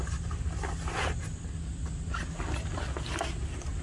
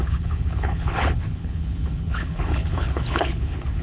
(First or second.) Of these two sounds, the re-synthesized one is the second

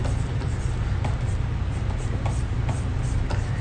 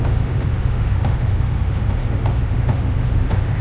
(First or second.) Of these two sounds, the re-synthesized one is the second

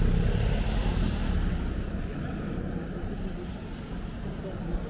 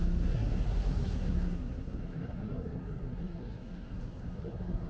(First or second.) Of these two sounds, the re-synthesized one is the second